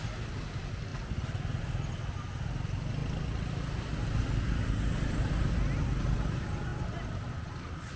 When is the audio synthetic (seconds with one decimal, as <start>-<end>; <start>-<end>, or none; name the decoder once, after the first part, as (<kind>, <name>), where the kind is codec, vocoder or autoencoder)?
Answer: none